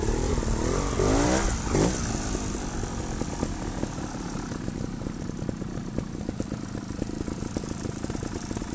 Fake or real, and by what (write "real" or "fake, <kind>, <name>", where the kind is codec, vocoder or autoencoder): real